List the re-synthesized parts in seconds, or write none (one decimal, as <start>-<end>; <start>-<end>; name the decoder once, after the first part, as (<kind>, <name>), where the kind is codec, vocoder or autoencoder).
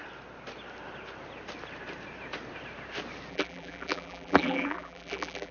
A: 3.3-5.5 (vocoder, BigVGAN v2)